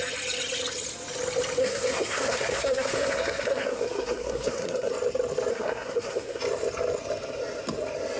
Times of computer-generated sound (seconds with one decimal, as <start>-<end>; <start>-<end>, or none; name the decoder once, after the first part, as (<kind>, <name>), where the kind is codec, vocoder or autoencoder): 1.6-4.9 (codec, SNAC); 5.5-6.4